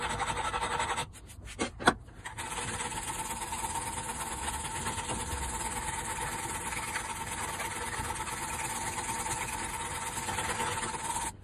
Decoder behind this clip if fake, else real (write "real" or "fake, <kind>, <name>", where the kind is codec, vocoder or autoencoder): real